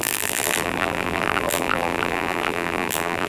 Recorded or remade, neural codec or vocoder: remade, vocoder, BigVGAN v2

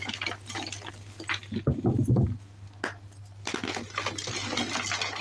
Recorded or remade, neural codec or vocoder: recorded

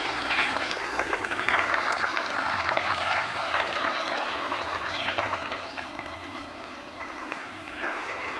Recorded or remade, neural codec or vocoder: remade, codec, SNAC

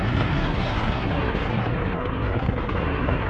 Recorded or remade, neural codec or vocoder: remade, codec, SNAC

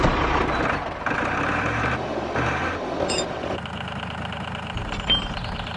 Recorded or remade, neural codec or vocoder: recorded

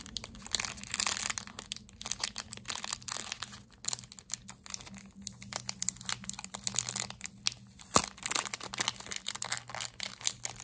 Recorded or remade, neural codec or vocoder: recorded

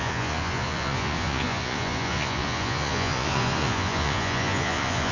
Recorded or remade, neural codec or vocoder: remade, vocoder, Vocos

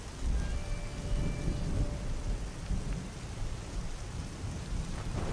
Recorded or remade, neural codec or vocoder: recorded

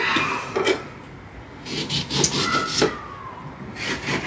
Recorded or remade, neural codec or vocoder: recorded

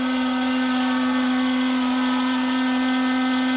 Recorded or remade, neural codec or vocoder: recorded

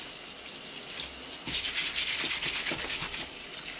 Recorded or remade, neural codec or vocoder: recorded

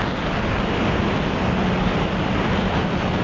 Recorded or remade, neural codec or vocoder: recorded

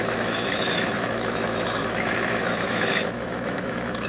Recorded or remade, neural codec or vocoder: remade, autoencoder, DAC-VAE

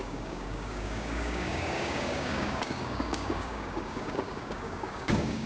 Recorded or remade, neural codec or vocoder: remade, codec, DAC